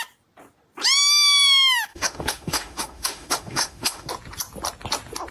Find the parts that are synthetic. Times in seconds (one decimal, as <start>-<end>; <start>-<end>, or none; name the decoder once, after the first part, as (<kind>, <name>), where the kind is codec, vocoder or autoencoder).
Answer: 1.9-4.1 (autoencoder, DAC-VAE)